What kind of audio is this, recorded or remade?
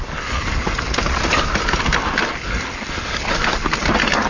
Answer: recorded